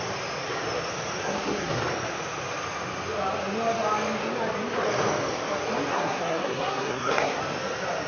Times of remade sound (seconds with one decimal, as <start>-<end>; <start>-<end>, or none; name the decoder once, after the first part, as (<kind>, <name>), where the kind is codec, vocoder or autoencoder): 1.2-1.8 (codec, SNAC); 5.9-7.4

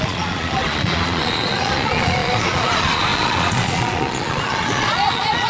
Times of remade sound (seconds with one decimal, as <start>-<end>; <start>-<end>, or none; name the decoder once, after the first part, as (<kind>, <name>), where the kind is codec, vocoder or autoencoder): 0.0-5.5 (vocoder, Vocos)

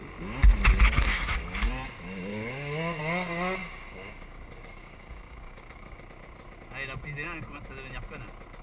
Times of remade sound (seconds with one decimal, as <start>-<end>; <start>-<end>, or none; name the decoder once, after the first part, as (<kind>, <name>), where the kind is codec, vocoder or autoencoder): 1.1-1.7 (codec, DAC); 2.3-3.0; 3.6-6.0

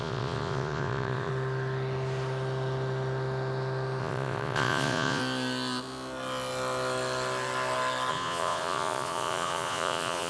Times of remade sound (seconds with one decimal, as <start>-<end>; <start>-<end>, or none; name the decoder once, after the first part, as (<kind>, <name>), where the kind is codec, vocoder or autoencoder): 0.0-1.3 (vocoder, Vocos); 4.0-5.2; 8.1-10.3

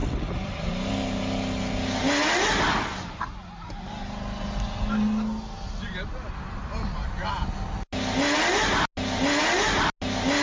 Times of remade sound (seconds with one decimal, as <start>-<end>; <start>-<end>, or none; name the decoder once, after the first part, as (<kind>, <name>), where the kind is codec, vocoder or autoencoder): none

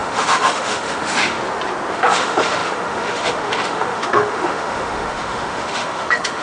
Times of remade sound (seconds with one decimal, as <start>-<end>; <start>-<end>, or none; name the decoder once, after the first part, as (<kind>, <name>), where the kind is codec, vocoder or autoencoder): 0.0-1.4 (autoencoder, DAC-VAE); 1.9-6.4